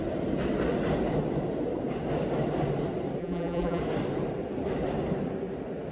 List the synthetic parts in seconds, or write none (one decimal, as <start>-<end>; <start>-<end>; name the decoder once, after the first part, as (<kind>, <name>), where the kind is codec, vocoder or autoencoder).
3.2-3.8 (vocoder, BigVGAN v2)